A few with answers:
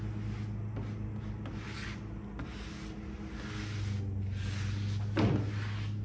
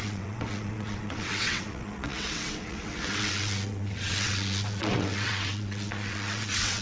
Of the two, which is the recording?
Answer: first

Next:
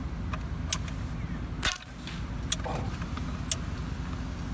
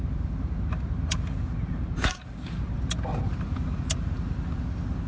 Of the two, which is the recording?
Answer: first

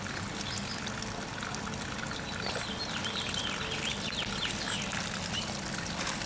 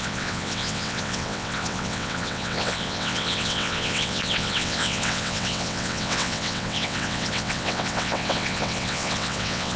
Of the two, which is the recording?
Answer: first